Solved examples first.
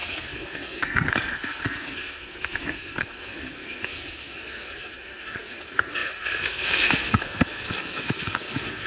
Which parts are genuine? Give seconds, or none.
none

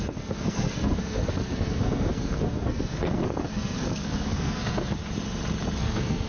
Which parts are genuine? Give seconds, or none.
5.0-5.8

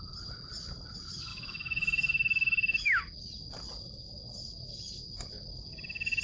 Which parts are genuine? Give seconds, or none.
0.0-1.3; 3.0-6.2

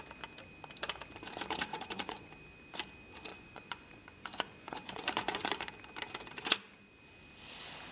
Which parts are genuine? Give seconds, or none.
0.0-1.7; 2.3-3.3; 5.7-7.9

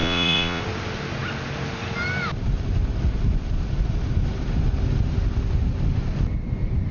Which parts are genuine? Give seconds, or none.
0.6-6.9